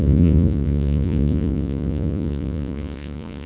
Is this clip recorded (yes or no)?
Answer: no